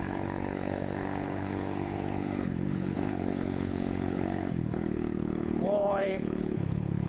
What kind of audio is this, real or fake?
fake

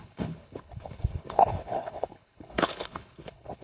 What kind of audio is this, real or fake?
fake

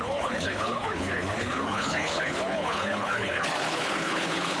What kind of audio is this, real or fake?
fake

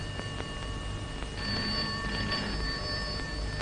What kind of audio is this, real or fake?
real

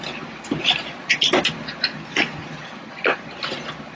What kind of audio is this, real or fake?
real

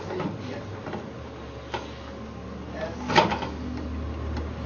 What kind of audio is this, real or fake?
real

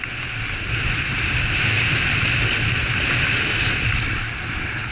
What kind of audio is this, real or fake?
real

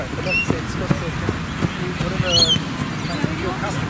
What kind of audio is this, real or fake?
real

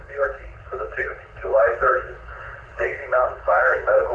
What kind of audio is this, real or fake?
fake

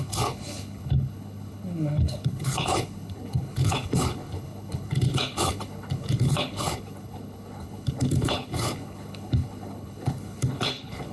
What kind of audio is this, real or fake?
fake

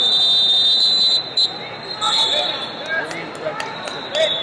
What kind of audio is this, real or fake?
real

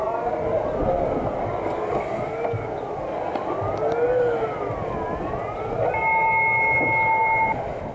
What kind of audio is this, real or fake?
real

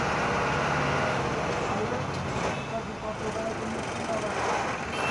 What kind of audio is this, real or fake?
real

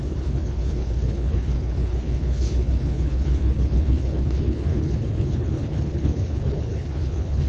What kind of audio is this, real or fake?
fake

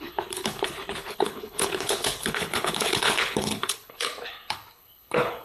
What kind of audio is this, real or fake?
fake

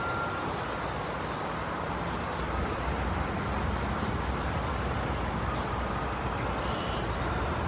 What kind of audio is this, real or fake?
real